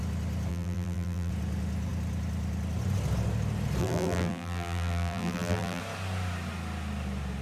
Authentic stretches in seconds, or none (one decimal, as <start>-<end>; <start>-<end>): 0.0-0.5; 1.3-3.8; 5.8-7.4